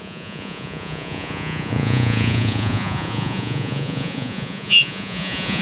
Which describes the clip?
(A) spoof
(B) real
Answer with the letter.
A